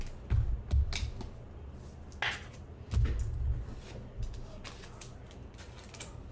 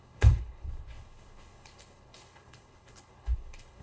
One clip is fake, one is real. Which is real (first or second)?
first